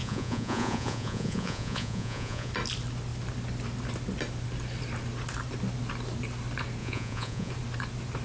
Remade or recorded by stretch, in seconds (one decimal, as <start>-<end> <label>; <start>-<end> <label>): 0.0-2.5 remade; 2.5-6.8 recorded; 6.8-7.5 remade; 7.5-8.2 recorded